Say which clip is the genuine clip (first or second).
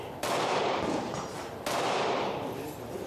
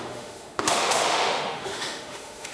first